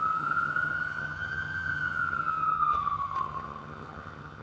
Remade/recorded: remade